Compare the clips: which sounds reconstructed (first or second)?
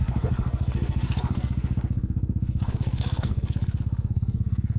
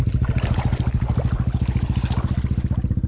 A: first